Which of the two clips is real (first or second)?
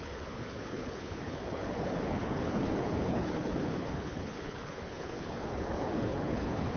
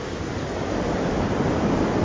second